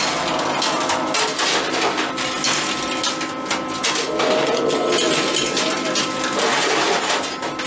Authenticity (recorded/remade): recorded